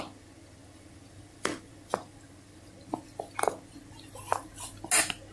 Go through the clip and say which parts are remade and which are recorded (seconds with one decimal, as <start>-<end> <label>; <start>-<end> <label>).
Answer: 0.0-0.6 recorded; 0.6-2.7 remade; 2.7-5.3 recorded